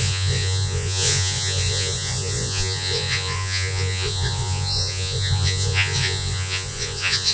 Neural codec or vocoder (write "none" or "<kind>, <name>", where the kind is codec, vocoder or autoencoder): vocoder, Vocos